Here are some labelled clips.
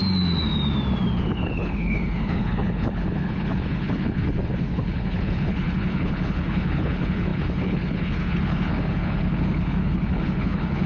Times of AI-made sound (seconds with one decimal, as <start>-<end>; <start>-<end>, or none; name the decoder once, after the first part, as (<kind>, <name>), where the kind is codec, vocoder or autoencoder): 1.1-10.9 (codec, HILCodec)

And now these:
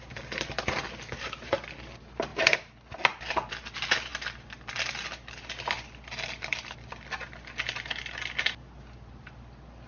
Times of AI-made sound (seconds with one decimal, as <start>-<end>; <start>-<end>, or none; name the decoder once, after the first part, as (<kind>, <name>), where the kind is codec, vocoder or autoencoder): none

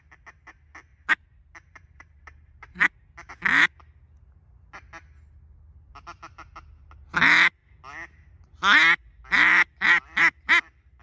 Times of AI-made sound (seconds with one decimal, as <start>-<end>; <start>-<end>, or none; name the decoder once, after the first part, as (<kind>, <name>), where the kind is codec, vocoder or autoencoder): 0.9-2.9 (vocoder, BigVGAN v2)

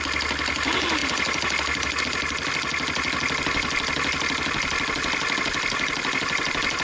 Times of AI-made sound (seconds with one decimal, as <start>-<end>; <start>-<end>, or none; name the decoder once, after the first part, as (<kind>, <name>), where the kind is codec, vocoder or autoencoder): none